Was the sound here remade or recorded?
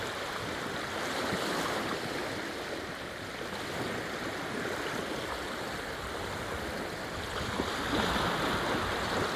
recorded